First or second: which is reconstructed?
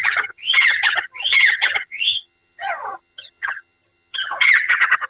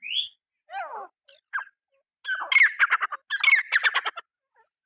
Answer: first